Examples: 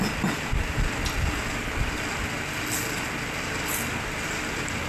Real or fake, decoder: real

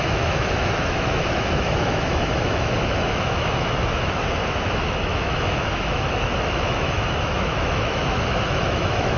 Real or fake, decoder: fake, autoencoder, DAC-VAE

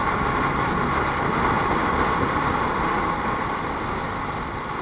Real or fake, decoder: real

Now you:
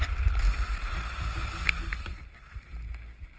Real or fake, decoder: real